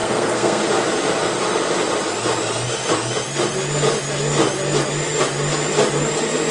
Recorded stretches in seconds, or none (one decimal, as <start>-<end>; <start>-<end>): 0.6-6.5